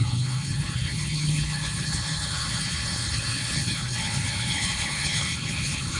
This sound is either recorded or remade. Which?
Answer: remade